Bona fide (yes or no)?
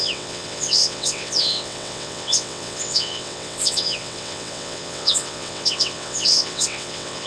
no